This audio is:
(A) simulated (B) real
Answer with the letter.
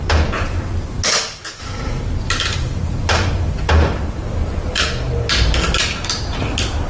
B